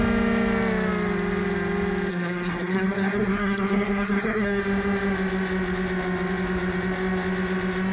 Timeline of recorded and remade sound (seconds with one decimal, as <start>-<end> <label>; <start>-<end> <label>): 0.0-2.1 recorded; 2.1-4.6 remade; 4.6-7.9 recorded